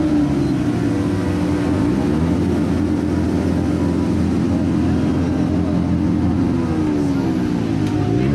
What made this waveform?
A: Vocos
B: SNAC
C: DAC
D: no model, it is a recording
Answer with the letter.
D